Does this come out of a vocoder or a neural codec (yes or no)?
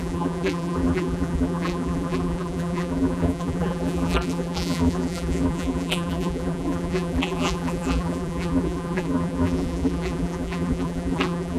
yes